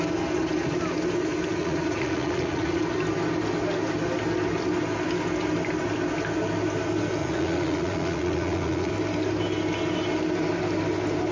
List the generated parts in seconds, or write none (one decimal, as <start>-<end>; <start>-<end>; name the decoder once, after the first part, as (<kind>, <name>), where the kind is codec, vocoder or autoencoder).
1.5-2.8 (vocoder, Vocos); 7.2-8.9